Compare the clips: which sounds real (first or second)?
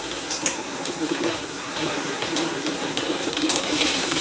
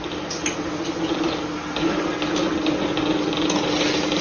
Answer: second